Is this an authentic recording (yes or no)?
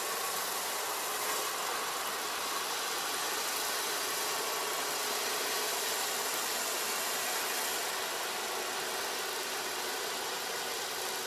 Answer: yes